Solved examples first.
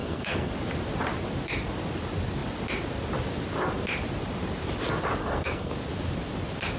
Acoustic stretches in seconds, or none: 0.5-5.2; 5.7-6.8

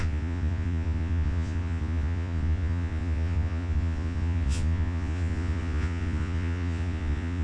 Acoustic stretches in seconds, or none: none